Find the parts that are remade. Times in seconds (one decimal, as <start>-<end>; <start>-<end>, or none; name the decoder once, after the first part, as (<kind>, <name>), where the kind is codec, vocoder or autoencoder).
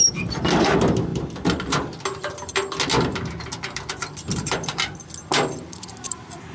none